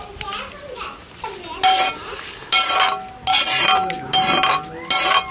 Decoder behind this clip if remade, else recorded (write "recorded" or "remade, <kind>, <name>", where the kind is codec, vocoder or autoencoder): recorded